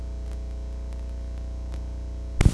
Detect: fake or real real